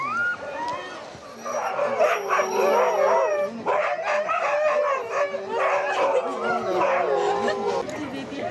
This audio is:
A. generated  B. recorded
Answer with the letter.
B